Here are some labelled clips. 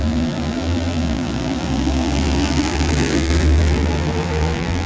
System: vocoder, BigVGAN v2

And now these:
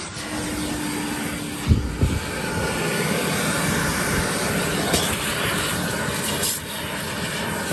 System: none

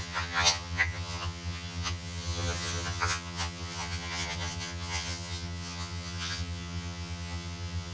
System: vocoder, HiFi-GAN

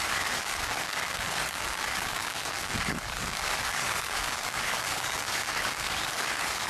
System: codec, DAC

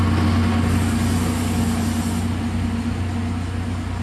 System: none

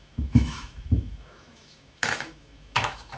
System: autoencoder, DAC-VAE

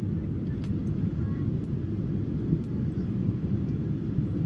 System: none